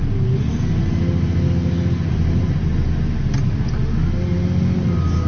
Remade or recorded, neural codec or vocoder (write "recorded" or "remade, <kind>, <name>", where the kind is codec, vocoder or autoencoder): recorded